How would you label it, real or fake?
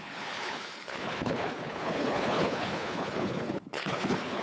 fake